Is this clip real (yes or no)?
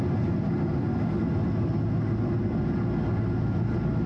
yes